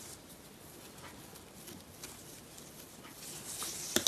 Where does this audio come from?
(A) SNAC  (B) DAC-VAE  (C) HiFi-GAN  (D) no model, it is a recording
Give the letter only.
D